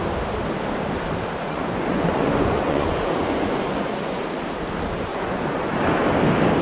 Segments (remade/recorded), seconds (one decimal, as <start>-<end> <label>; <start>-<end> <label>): 0.0-1.4 recorded; 1.4-4.2 remade; 4.2-5.1 recorded; 5.1-5.7 remade; 5.7-6.6 recorded